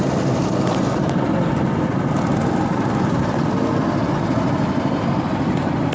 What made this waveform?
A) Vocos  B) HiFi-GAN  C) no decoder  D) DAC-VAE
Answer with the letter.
C